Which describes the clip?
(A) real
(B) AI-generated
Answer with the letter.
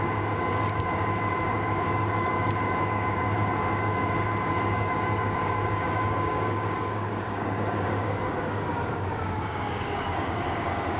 B